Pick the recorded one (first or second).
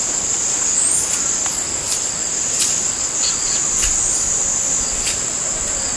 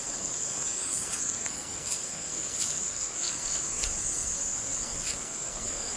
first